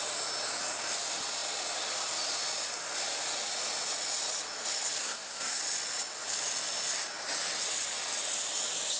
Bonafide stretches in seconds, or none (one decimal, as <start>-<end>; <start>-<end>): 0.0-5.0; 5.6-9.0